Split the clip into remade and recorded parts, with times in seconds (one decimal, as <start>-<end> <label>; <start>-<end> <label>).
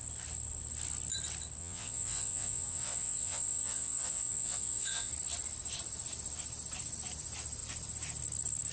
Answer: 0.0-1.6 recorded; 1.6-5.1 remade; 5.1-8.7 recorded